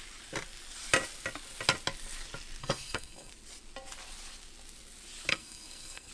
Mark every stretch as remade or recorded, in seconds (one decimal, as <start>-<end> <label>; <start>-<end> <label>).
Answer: 0.0-2.6 recorded; 2.6-3.3 remade; 3.3-5.3 recorded; 5.3-6.1 remade